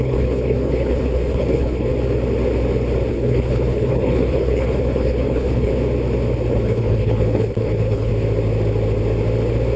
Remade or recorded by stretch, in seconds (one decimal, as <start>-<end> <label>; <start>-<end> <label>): 0.0-1.9 remade; 1.9-3.1 recorded; 3.1-5.7 remade; 5.7-6.5 recorded; 6.5-8.1 remade; 8.1-9.8 recorded